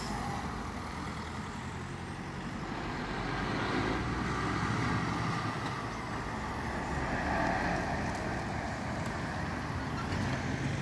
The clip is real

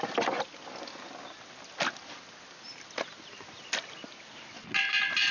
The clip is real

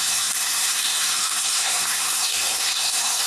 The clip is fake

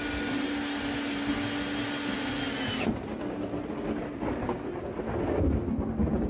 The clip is real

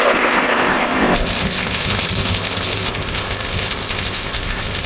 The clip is fake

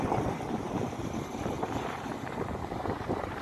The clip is fake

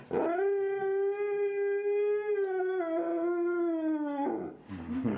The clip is real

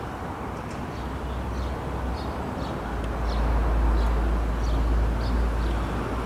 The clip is real